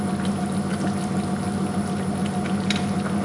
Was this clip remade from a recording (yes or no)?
no